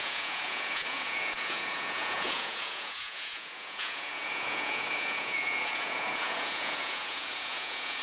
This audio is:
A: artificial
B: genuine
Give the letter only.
A